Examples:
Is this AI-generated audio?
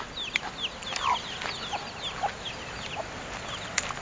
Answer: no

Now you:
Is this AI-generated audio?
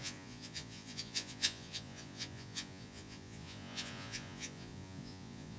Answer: yes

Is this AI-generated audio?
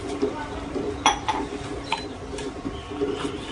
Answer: yes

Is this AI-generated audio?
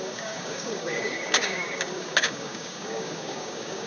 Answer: yes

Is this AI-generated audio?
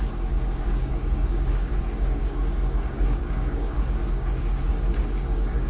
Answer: yes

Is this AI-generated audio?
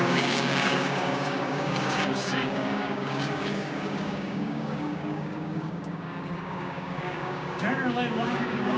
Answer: yes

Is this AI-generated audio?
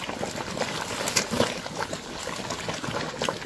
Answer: no